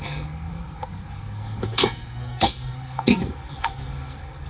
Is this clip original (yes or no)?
no